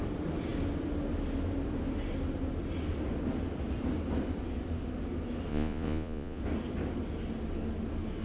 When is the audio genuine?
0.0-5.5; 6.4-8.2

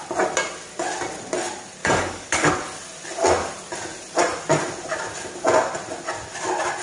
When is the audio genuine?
0.0-1.8; 2.5-6.8

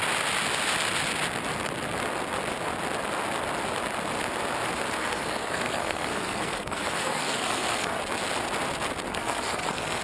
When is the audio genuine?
0.0-5.0; 8.0-9.1

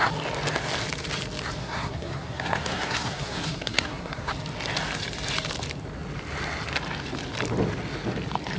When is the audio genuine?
0.0-1.6; 4.3-8.6

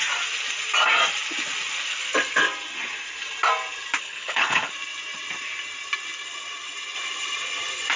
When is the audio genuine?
0.0-4.0; 4.7-8.0

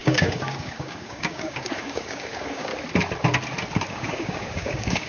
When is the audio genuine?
2.7-3.9

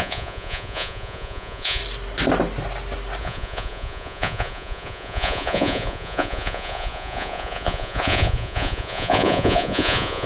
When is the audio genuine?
1.8-3.2